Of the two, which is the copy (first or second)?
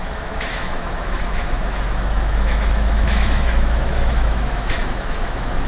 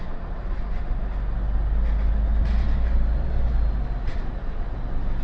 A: first